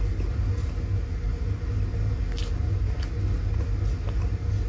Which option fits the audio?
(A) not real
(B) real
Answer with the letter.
B